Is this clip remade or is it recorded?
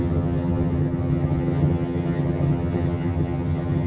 remade